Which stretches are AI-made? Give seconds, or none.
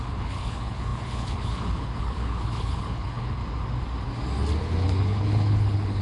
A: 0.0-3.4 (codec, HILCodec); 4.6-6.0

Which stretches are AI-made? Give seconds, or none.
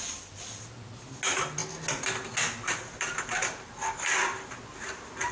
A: none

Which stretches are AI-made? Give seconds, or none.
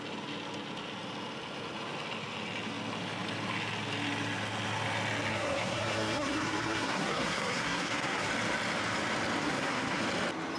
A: 5.3-8.3 (codec, SNAC); 9.4-10.0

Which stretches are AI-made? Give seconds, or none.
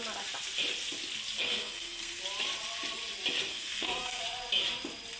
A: 1.4-2.2 (codec, SNAC); 3.5-4.2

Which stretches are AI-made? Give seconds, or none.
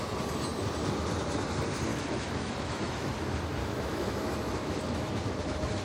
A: 1.9-3.1 (autoencoder, DAC-VAE); 3.6-5.1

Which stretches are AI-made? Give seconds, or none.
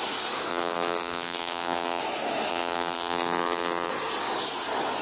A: 0.5-2.0 (vocoder, BigVGAN v2); 2.5-3.9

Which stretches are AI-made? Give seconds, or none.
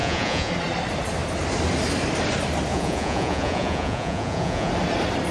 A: 0.0-0.5 (vocoder, Vocos); 2.7-4.7